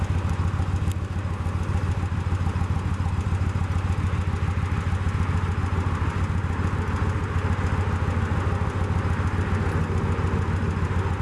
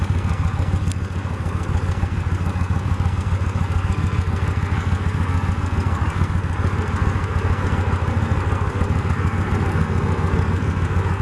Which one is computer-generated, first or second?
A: second